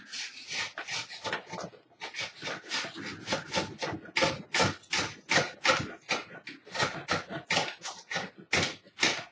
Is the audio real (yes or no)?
yes